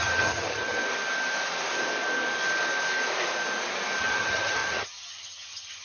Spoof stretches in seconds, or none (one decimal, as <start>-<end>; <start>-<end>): 0.0-0.8; 4.0-5.8